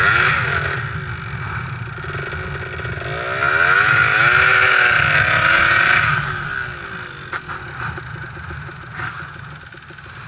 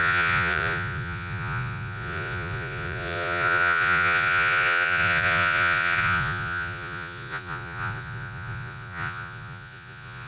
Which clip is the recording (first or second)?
first